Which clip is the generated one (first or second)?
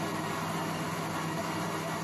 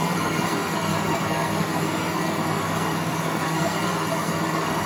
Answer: second